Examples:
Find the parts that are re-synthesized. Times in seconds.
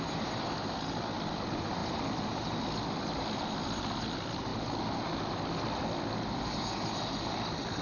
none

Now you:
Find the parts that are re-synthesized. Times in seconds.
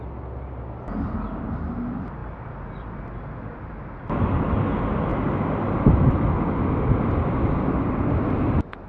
none